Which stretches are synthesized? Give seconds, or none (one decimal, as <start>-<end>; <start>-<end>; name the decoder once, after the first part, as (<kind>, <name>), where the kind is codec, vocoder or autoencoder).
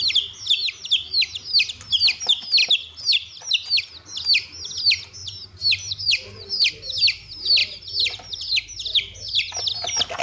5.2-6.7 (vocoder, BigVGAN v2); 7.6-9.6